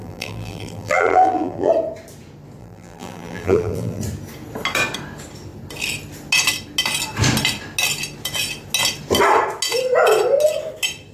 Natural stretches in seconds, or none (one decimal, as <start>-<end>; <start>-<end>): 1.7-2.6; 4.0-11.1